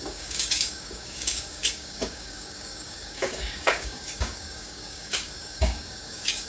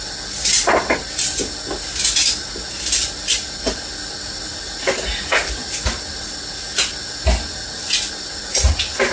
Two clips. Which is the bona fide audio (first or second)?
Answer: second